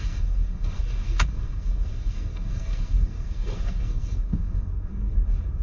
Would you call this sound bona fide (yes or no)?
no